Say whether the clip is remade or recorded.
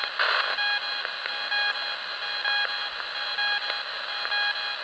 recorded